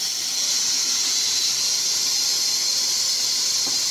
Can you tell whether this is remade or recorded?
recorded